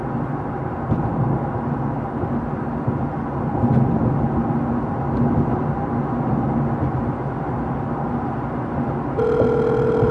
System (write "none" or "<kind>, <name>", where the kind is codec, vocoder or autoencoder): none